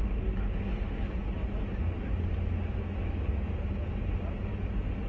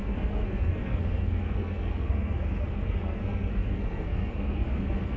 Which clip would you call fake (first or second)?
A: second